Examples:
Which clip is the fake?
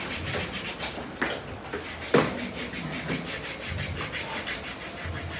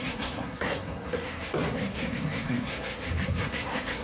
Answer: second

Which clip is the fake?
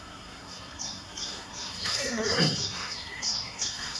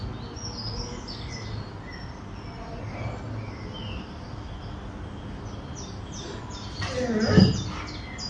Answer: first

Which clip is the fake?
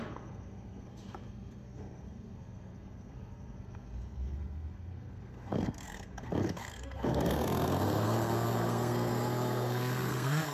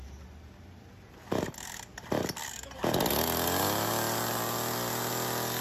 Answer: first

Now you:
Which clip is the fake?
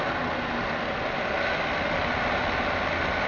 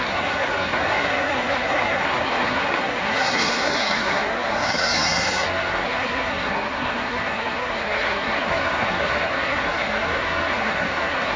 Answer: second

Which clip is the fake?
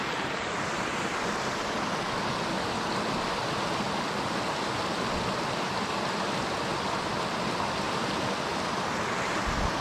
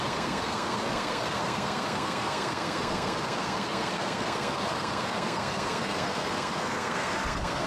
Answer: second